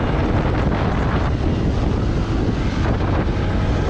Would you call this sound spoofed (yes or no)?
no